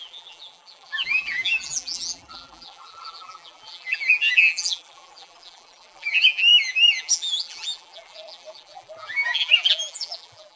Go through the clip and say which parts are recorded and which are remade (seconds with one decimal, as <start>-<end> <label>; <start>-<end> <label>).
0.0-10.6 remade